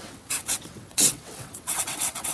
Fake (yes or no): yes